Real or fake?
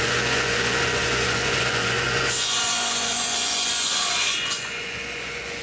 fake